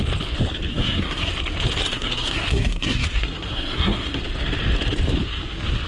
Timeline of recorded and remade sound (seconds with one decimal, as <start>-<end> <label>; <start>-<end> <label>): 0.0-0.7 recorded; 0.7-1.3 remade; 1.3-1.9 recorded; 1.9-4.2 remade; 4.2-5.9 recorded